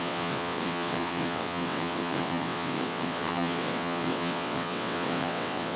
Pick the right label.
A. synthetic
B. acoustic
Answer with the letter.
A